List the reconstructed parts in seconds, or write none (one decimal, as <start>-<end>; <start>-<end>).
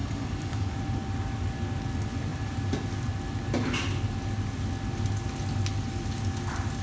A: 0.0-0.8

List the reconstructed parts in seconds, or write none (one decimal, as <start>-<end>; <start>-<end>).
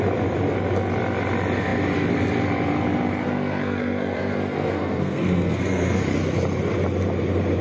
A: 3.2-6.0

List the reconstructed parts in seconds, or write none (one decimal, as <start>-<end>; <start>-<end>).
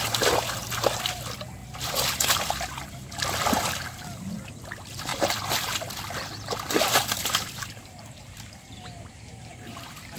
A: 1.6-2.4; 5.1-10.2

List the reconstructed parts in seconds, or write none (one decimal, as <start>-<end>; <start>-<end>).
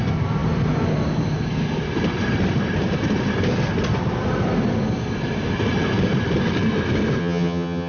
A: 7.2-7.9